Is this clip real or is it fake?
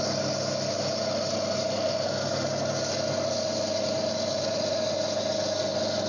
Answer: real